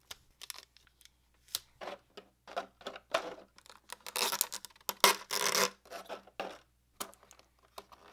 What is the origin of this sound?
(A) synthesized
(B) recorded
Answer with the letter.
B